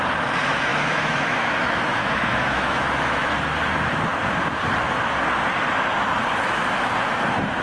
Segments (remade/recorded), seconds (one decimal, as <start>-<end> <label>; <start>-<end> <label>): 0.0-0.7 recorded; 0.7-3.3 remade; 3.3-7.6 recorded